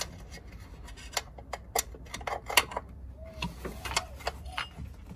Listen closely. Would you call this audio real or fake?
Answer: real